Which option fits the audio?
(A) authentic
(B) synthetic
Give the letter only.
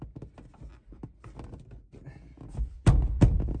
A